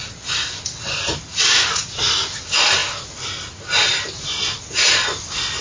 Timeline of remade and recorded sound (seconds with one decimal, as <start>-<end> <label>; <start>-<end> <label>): 0.0-1.3 recorded; 1.3-2.0 remade; 2.0-5.6 recorded